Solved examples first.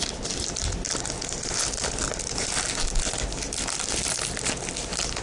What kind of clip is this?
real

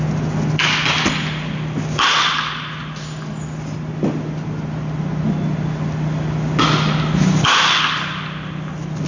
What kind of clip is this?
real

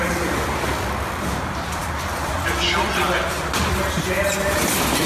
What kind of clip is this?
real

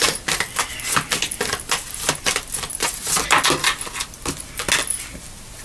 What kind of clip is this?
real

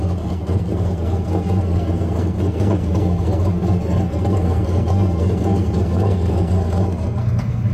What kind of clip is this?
fake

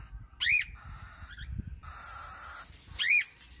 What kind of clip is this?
real